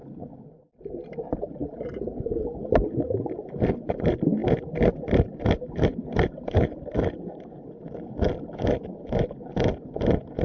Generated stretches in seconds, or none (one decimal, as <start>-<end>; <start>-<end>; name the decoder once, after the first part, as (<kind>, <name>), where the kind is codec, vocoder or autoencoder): none